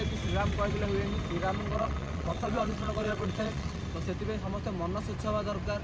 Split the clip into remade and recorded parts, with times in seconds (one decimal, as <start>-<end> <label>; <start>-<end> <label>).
0.0-1.7 recorded; 1.7-3.8 remade; 3.8-5.8 recorded